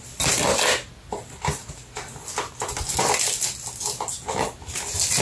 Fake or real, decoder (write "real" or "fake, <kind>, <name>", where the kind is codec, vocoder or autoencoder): real